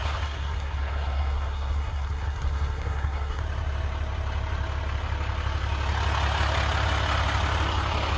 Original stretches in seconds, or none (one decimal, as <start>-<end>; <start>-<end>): 3.4-8.2